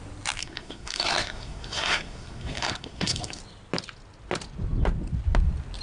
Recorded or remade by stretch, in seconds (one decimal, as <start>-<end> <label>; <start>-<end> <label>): 0.0-0.4 recorded; 0.4-3.4 remade; 3.4-5.8 recorded

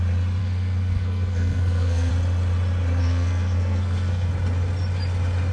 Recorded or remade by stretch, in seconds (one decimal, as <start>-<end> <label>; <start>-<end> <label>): 0.0-0.4 recorded; 0.4-2.1 remade; 2.1-3.0 recorded; 3.0-4.3 remade; 4.3-5.5 recorded

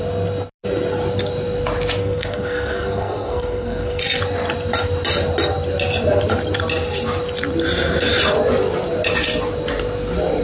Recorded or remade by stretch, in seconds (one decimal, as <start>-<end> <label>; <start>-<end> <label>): 0.0-2.0 recorded; 2.0-4.0 remade; 4.0-10.4 recorded

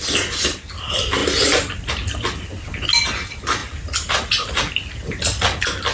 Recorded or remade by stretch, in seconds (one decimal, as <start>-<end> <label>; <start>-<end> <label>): 0.0-5.9 recorded